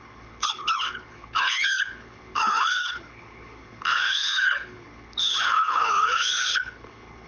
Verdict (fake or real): fake